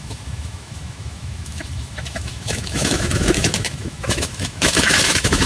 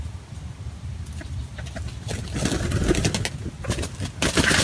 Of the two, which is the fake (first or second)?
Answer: first